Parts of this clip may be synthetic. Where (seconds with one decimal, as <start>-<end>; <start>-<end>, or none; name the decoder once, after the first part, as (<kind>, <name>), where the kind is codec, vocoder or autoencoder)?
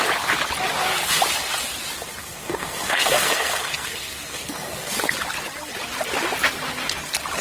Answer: 2.2-4.9 (codec, SNAC)